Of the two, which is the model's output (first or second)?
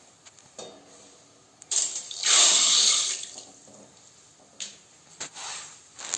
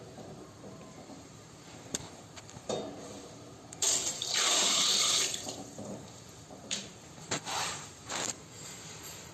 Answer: second